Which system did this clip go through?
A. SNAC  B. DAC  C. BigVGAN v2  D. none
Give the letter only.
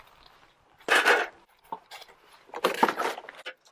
D